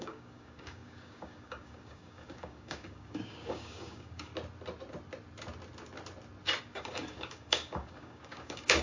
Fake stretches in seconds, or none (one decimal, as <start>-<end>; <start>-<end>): 0.0-4.3; 6.6-8.8